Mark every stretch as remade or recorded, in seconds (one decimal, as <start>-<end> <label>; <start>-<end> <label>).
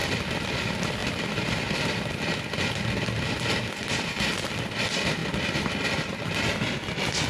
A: 0.0-0.6 recorded; 0.6-7.3 remade